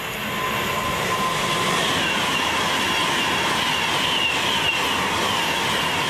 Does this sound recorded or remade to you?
recorded